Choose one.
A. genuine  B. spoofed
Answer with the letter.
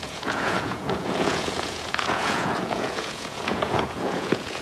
B